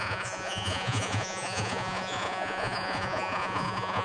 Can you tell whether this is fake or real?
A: fake